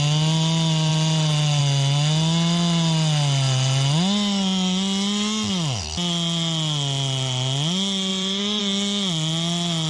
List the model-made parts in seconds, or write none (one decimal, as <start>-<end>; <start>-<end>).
0.9-1.6; 8.1-8.6